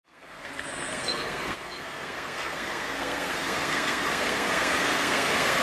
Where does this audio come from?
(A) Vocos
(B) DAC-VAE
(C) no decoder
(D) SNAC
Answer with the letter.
D